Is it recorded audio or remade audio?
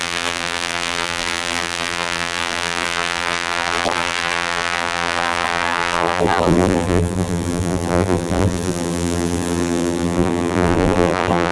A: remade